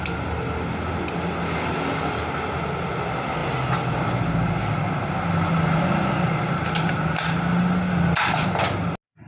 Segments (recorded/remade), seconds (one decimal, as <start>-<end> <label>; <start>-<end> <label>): 0.0-9.3 recorded